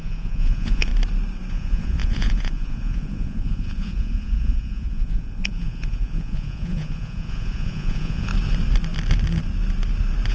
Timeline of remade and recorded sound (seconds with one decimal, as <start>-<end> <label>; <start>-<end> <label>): 0.0-0.9 remade; 0.9-1.5 recorded; 1.5-8.3 remade; 8.3-10.3 recorded